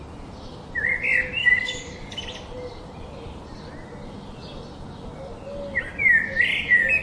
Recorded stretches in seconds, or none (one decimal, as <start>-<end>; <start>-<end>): 0.0-1.4; 2.2-7.0